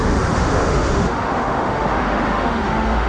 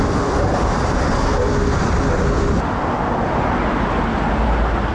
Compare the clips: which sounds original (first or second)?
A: second